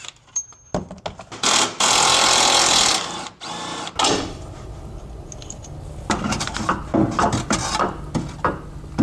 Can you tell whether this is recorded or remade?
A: recorded